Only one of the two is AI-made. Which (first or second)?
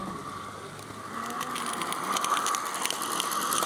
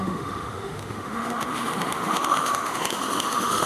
second